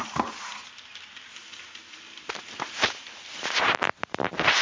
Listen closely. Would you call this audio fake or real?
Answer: real